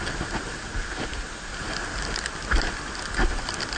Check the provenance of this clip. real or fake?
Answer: real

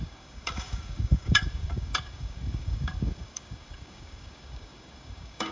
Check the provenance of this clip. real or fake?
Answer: fake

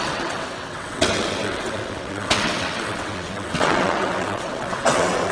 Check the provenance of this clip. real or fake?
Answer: fake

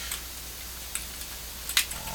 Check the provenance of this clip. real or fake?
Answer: real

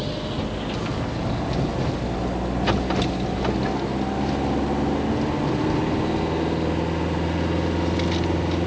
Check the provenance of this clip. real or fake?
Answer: real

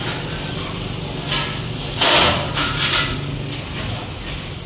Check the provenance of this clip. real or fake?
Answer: real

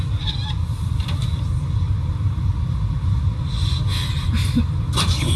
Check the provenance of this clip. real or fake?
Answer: real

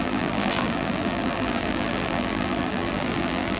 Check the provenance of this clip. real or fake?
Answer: fake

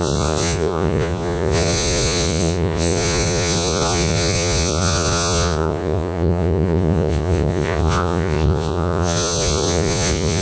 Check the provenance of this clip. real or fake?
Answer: fake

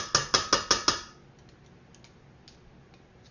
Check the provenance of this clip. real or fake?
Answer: real